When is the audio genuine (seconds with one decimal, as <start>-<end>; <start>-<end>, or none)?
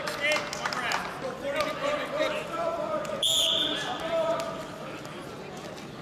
0.0-1.8; 5.4-6.0